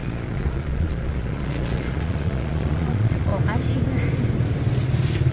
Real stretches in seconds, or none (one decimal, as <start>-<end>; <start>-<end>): 3.3-5.3